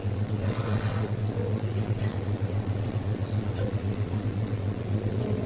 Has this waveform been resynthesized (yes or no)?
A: yes